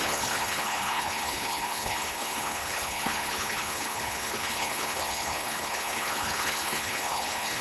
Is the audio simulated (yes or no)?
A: yes